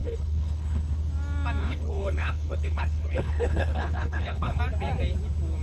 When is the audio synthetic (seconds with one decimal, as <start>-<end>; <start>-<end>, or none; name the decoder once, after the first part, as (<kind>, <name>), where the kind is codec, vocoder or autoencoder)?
0.0-0.8 (codec, HILCodec); 1.6-4.6